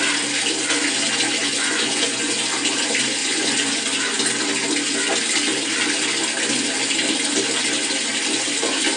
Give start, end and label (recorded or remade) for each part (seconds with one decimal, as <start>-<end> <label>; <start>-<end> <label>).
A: 0.0-1.4 recorded; 1.4-2.4 remade; 2.4-3.2 recorded; 3.2-3.8 remade; 3.8-9.0 recorded